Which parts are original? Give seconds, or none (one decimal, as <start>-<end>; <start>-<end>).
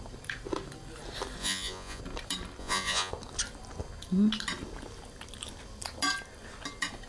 0.0-1.4; 2.0-2.6; 3.1-7.1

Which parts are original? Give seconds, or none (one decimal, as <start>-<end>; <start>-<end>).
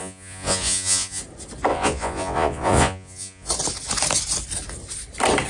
1.2-1.7; 3.5-5.5